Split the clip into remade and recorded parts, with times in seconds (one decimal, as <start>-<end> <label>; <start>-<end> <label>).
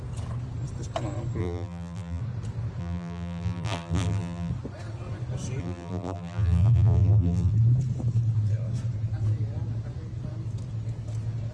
0.0-1.4 recorded; 1.4-2.2 remade; 2.2-2.8 recorded; 2.8-4.5 remade; 4.5-5.6 recorded; 5.6-7.5 remade; 7.5-11.5 recorded